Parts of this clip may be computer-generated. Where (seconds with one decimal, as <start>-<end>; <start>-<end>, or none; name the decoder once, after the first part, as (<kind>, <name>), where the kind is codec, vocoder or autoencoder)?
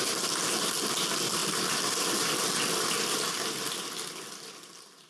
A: none